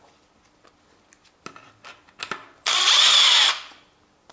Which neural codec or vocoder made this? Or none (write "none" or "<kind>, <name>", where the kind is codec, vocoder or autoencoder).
none